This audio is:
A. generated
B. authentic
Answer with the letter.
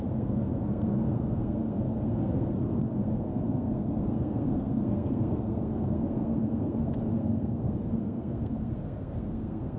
A